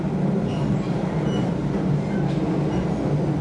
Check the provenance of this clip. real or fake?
real